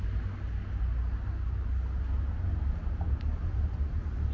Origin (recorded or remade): recorded